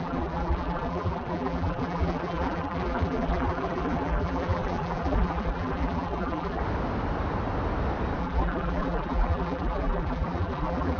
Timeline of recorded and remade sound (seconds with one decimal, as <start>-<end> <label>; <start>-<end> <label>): 0.0-6.6 remade; 6.6-8.2 recorded; 8.2-11.0 remade